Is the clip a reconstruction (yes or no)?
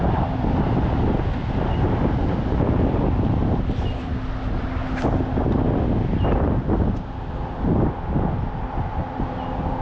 no